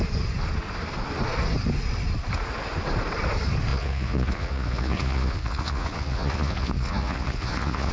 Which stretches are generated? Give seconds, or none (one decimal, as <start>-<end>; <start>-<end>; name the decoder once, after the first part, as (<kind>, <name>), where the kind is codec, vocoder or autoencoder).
3.7-7.9 (vocoder, Vocos)